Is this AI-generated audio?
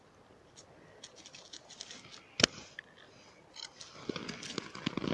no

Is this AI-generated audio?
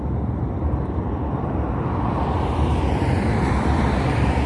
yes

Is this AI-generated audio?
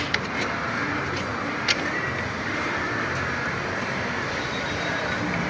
yes